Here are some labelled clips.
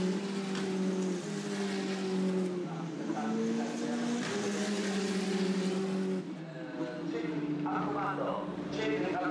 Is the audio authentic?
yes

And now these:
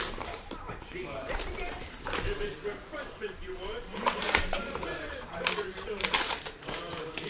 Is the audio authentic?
no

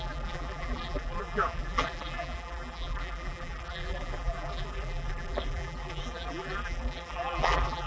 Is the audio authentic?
no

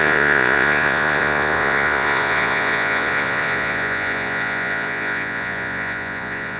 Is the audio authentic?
no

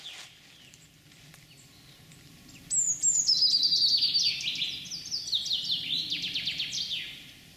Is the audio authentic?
yes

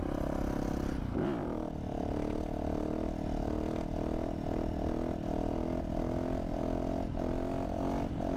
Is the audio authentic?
yes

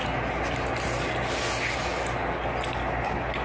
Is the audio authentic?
yes